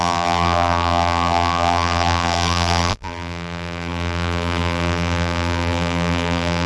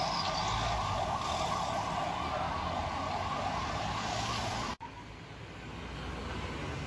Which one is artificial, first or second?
first